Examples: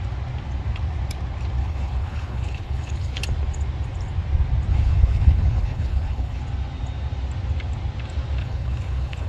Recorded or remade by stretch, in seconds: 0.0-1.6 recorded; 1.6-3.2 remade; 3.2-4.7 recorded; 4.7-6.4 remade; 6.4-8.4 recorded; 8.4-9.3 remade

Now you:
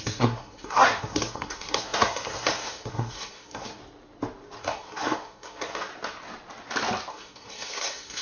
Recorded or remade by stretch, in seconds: 0.0-3.8 remade; 3.8-4.6 recorded; 4.6-5.9 remade; 5.9-7.1 recorded; 7.1-8.2 remade